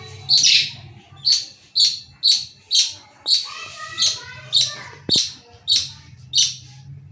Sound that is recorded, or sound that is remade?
recorded